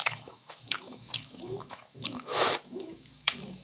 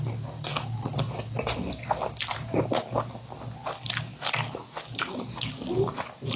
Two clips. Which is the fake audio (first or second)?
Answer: first